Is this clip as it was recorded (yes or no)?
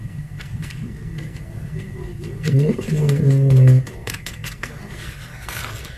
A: no